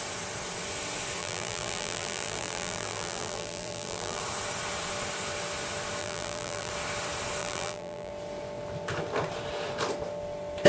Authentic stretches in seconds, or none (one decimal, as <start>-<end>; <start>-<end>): 0.0-1.2; 4.2-6.0; 6.7-7.4; 8.1-10.7